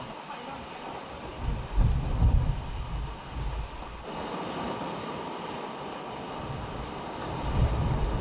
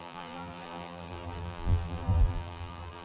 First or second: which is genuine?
first